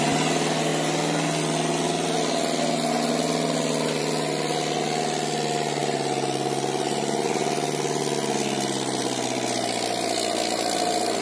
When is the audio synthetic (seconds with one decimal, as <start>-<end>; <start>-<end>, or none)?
none